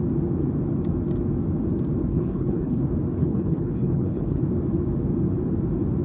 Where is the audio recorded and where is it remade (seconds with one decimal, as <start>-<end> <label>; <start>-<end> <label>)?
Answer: 0.0-2.1 recorded; 2.1-2.8 remade; 2.8-3.2 recorded; 3.2-4.4 remade; 4.4-6.0 recorded